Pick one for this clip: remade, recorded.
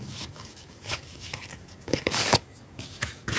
remade